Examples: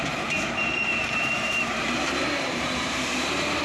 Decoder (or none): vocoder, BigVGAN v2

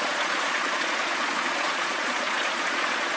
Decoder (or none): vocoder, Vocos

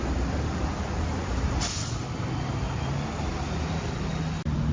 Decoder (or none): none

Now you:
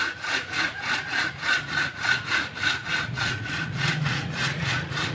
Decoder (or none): vocoder, Vocos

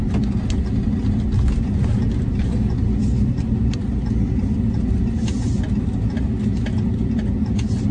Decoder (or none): none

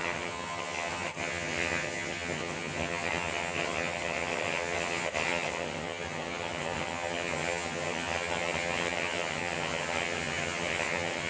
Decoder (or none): vocoder, HiFi-GAN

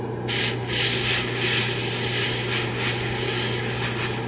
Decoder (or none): none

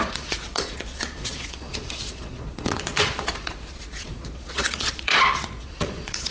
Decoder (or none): vocoder, Vocos